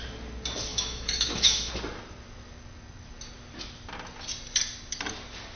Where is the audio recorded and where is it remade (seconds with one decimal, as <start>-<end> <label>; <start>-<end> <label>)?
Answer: 0.0-0.7 recorded; 0.7-1.7 remade; 1.7-5.6 recorded